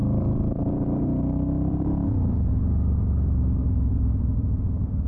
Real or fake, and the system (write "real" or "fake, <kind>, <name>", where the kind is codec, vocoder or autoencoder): fake, vocoder, BigVGAN v2